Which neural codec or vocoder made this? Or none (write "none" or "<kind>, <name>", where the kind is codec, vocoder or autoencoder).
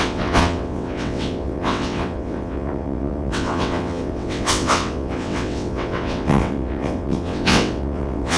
vocoder, WaveNeXt